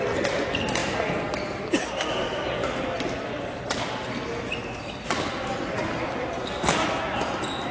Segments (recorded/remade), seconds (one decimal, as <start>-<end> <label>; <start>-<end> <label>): 0.0-7.7 recorded